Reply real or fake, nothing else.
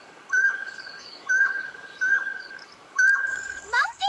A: fake